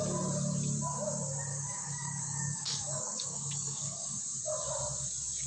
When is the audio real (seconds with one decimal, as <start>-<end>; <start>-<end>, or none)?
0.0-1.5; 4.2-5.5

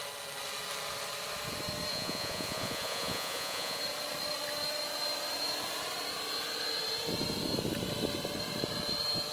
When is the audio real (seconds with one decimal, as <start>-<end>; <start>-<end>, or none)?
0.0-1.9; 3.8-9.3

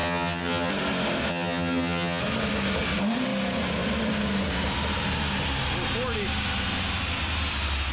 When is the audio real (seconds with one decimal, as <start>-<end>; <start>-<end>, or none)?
0.7-1.3; 2.2-7.9

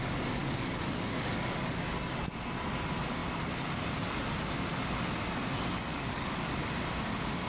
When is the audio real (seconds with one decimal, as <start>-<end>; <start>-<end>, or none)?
0.0-0.4; 1.8-5.9; 6.6-7.5

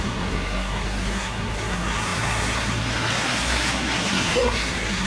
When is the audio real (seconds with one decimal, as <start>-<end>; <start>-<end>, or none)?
none